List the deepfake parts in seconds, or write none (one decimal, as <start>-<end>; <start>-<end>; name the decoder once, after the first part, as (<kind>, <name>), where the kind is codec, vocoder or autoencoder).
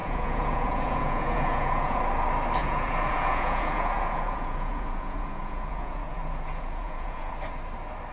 0.0-2.0 (vocoder, Vocos); 2.6-7.3